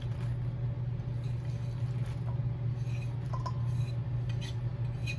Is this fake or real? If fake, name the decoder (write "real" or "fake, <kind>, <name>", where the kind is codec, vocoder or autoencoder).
real